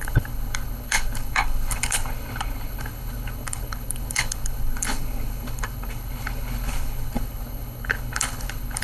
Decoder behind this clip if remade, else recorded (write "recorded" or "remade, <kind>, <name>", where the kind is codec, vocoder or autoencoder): remade, codec, HILCodec